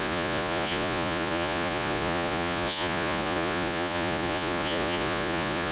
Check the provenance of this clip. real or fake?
fake